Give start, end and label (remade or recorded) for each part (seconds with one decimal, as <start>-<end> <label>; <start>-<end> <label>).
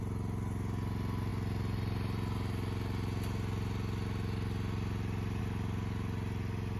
0.0-6.8 recorded